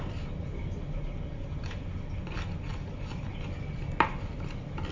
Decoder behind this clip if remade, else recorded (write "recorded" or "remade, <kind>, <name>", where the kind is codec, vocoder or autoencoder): recorded